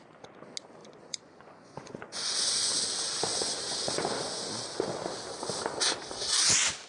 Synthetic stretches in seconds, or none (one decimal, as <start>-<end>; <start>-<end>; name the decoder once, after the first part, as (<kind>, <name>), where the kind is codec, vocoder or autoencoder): 0.8-2.7 (vocoder, Vocos); 3.3-4.4